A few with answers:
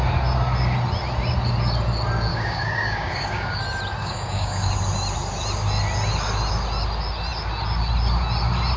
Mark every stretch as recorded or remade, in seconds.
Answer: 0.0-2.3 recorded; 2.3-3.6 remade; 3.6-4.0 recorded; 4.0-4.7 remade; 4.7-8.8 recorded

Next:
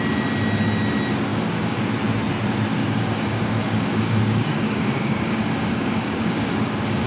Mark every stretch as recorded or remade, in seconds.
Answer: 0.0-1.3 recorded; 1.3-1.8 remade; 1.8-2.8 recorded; 2.8-7.1 remade

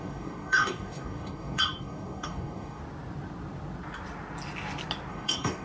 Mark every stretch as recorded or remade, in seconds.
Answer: 0.0-2.8 remade; 2.8-5.1 recorded; 5.1-5.6 remade

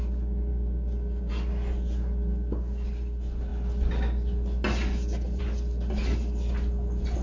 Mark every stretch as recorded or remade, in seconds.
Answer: 0.0-0.5 recorded; 0.5-1.3 remade; 1.3-7.2 recorded

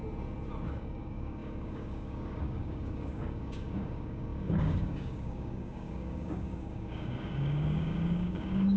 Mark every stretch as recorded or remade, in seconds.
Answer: 0.0-0.7 recorded; 0.7-8.8 remade

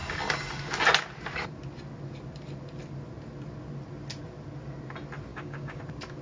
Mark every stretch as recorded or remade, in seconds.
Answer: 0.0-5.3 recorded; 5.3-5.8 remade; 5.8-6.2 recorded